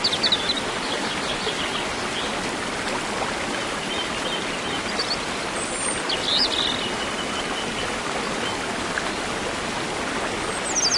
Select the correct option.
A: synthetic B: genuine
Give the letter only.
B